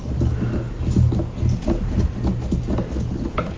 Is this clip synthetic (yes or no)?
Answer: no